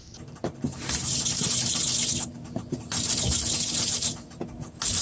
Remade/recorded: recorded